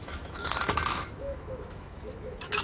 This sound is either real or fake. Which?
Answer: fake